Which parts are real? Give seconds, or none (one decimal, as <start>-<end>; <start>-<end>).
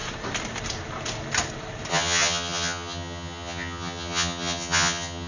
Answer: 0.0-1.9